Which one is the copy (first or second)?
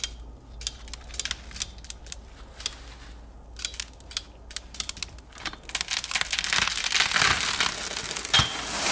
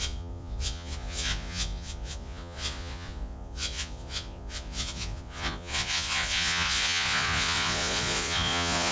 second